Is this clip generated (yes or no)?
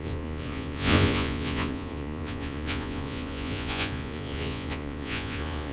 yes